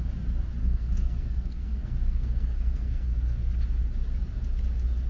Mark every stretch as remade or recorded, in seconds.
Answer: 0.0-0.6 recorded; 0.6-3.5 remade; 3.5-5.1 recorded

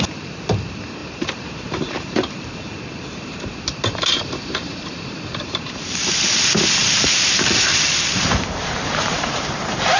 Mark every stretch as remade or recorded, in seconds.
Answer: 0.0-1.0 recorded; 1.0-6.0 remade; 6.0-6.8 recorded; 6.8-10.0 remade

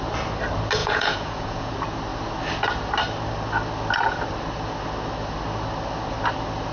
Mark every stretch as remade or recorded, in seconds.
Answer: 0.0-0.8 recorded; 0.8-1.7 remade; 1.7-6.7 recorded

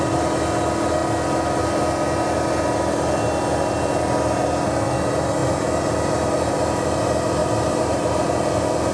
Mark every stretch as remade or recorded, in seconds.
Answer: 0.0-7.4 recorded; 7.4-8.4 remade; 8.4-8.9 recorded

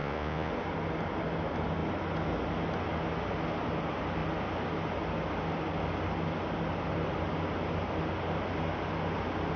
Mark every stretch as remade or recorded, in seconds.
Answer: 0.0-0.5 remade; 0.5-9.6 recorded

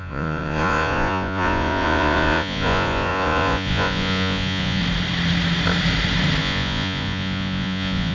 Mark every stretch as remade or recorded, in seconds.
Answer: 0.0-4.8 remade; 4.8-6.4 recorded; 6.4-8.1 remade

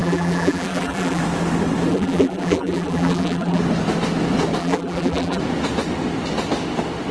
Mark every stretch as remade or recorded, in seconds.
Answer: 0.0-1.2 remade; 1.2-1.9 recorded; 1.9-3.6 remade; 3.6-4.6 recorded; 4.6-5.4 remade; 5.4-7.1 recorded

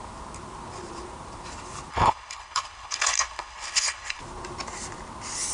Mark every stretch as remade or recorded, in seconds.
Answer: 0.0-1.9 recorded; 1.9-4.2 remade; 4.2-5.5 recorded